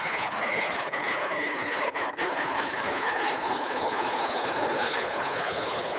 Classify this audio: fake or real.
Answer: fake